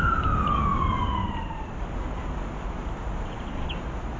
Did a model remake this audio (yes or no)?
no